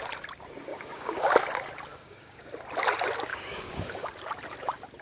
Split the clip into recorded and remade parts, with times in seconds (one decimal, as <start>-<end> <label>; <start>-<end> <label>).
0.0-0.7 recorded; 0.7-1.3 remade; 1.3-1.9 recorded; 1.9-2.5 remade; 2.5-3.3 recorded; 3.3-4.1 remade; 4.1-5.0 recorded